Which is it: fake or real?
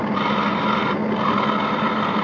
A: real